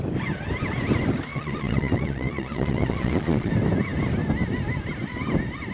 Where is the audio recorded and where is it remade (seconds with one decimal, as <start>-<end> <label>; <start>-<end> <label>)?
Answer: 0.0-1.3 recorded; 1.3-3.5 remade; 3.5-5.7 recorded